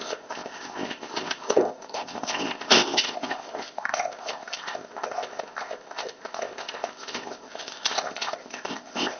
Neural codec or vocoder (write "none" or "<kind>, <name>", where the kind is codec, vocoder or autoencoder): codec, ZipCodec